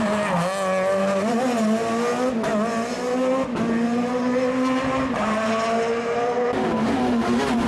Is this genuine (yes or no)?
yes